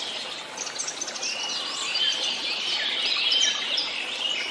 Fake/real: real